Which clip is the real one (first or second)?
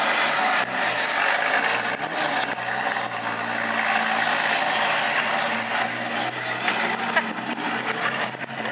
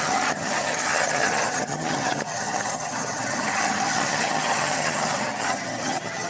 first